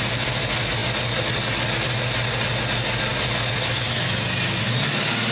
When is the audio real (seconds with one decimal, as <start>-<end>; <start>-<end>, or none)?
0.0-5.3